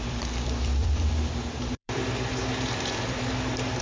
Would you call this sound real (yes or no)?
no